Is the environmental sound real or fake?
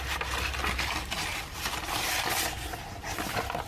real